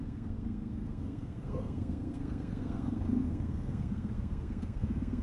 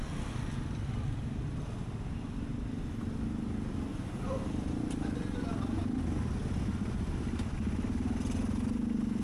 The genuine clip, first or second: second